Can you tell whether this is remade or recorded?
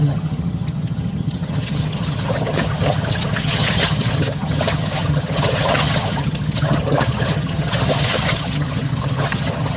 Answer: remade